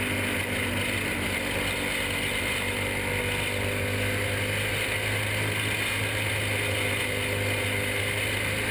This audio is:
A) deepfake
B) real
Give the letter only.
B